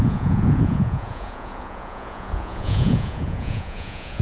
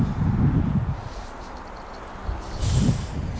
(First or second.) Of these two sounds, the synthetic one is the first